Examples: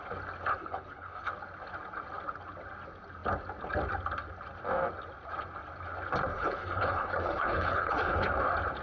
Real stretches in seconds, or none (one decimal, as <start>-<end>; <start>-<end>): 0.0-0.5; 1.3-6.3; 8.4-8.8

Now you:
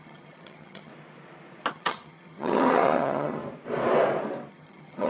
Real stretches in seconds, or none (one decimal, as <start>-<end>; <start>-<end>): 0.9-1.7; 3.4-4.5

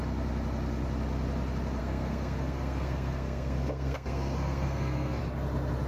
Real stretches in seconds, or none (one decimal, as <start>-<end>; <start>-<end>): 0.0-1.8; 5.2-5.9

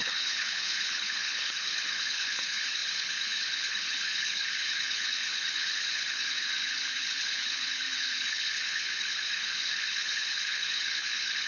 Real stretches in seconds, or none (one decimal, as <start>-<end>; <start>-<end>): none

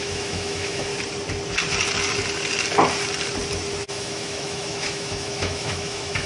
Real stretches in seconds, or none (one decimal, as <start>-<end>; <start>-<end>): 0.9-3.9

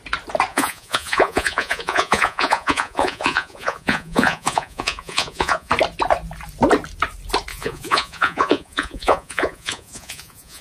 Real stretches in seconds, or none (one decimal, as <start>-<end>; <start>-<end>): 0.0-0.5; 5.7-7.5

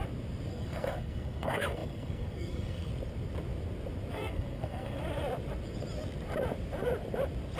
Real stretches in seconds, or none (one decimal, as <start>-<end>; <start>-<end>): 0.0-0.5; 2.9-4.1; 5.0-7.6